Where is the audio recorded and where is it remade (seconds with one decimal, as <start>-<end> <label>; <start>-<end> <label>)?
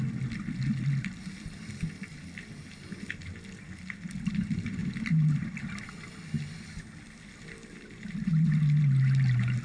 0.0-9.6 recorded